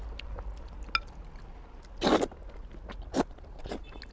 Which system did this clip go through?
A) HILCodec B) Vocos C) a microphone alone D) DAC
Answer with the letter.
C